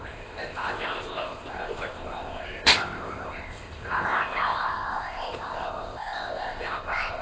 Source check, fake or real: fake